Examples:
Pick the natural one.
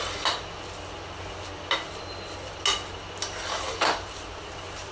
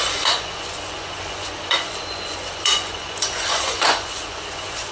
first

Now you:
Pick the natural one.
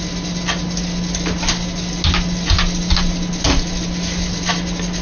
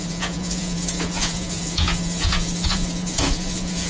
first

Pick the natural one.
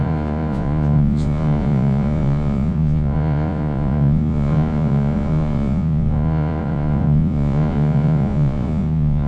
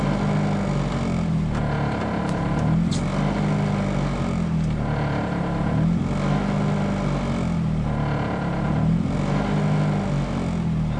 second